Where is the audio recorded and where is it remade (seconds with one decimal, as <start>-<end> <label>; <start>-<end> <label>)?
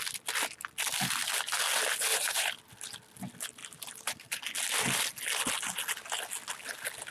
0.0-2.1 recorded; 2.1-2.7 remade; 2.7-3.6 recorded; 3.6-4.4 remade; 4.4-7.1 recorded